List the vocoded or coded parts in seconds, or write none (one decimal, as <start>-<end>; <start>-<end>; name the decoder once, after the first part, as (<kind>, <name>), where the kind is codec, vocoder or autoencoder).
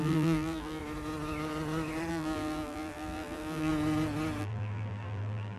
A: 0.0-0.8 (vocoder, BigVGAN v2); 2.1-3.7; 4.4-5.6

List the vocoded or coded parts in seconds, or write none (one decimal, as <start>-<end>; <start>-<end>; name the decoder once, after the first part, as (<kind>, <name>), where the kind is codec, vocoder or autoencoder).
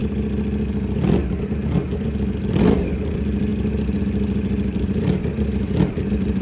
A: 2.5-3.5 (vocoder, BigVGAN v2); 4.0-6.4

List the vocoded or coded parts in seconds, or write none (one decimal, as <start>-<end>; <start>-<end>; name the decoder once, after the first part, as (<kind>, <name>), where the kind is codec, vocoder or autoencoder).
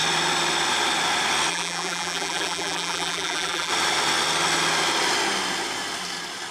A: 1.5-3.7 (vocoder, BigVGAN v2)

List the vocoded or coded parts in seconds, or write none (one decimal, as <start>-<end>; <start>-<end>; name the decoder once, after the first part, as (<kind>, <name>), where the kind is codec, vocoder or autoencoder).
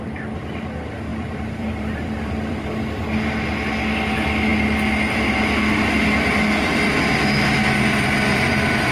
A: 1.1-2.7 (vocoder, BigVGAN v2)